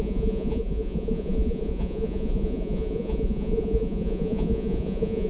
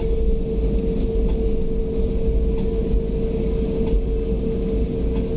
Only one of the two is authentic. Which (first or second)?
second